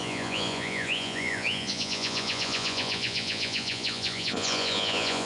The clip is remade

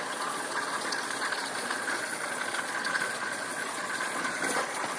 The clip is remade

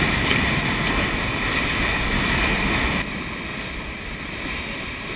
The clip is recorded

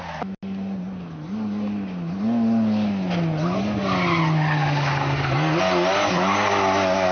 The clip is recorded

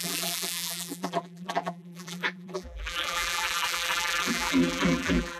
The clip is remade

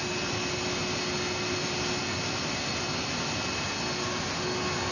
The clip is recorded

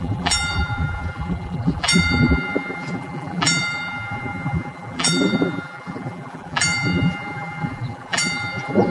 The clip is remade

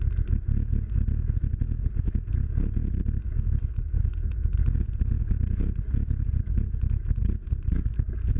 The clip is recorded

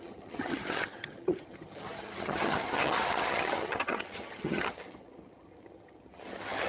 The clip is remade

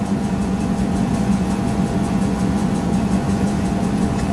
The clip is remade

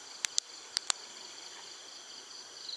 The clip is recorded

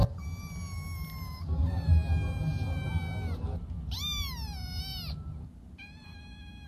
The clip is recorded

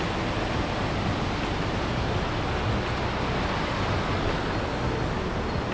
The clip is recorded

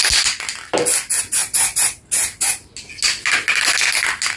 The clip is recorded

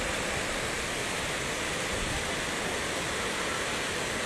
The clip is recorded